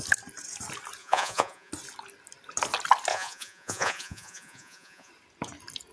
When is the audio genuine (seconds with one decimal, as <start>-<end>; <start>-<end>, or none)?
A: 0.0-1.0; 1.7-3.1; 5.1-5.9